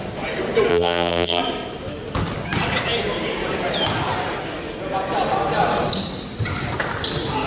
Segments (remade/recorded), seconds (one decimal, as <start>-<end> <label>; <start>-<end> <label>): 0.0-0.7 recorded; 0.7-1.4 remade; 1.4-7.5 recorded